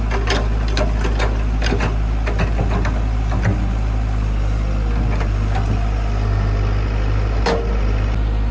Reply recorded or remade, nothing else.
recorded